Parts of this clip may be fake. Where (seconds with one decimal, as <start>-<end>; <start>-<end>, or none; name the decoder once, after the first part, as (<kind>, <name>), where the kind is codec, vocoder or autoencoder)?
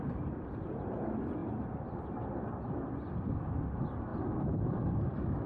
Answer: 1.4-3.3 (vocoder, BigVGAN v2)